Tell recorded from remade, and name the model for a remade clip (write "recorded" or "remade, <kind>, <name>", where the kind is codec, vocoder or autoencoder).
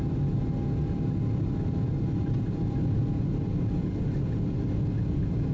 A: recorded